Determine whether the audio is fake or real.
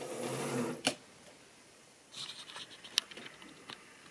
real